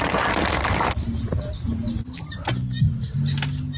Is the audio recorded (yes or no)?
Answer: yes